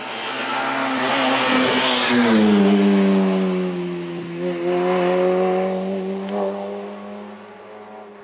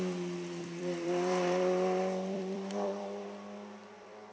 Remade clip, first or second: second